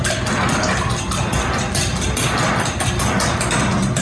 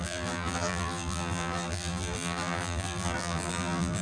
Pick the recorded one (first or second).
first